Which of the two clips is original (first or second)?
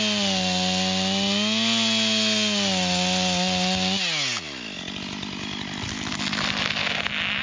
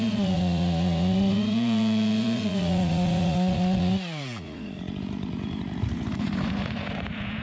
first